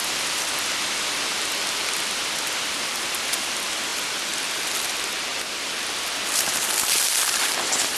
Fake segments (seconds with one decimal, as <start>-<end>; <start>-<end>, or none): 0.0-0.7; 3.9-4.6; 5.3-6.0